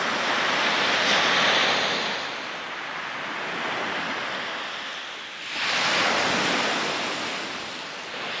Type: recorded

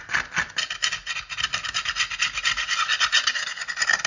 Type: recorded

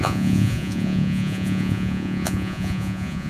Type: remade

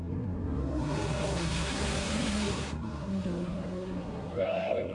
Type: remade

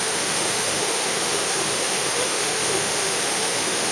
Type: remade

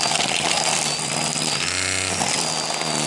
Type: recorded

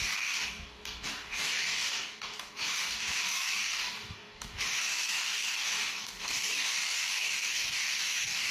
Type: remade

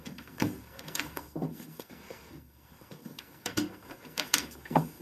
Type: remade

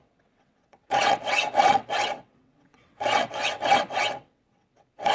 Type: remade